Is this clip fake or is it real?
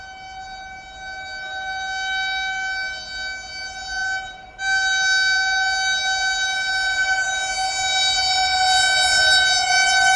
real